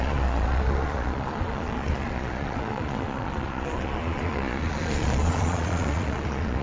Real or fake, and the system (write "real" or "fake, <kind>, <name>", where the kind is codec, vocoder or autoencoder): fake, vocoder, Vocos